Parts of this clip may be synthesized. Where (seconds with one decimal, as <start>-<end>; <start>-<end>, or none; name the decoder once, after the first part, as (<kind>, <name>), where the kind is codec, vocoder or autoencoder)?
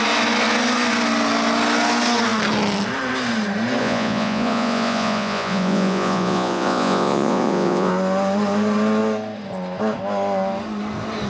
3.8-7.9 (vocoder, Vocos)